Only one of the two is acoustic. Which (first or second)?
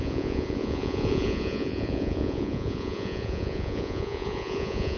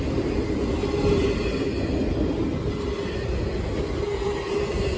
second